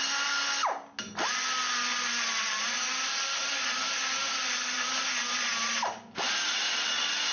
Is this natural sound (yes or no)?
yes